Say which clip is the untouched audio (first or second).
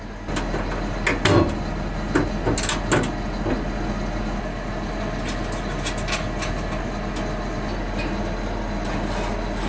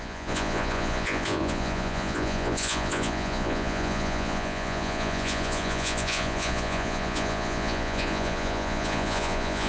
first